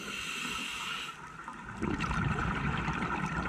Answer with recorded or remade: recorded